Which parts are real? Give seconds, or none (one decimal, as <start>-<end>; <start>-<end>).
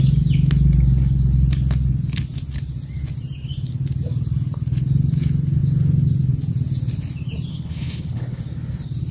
0.0-7.5; 8.4-9.1